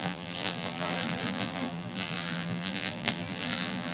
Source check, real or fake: fake